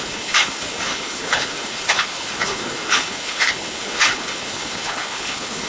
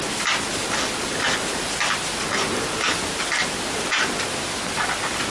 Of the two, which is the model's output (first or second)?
first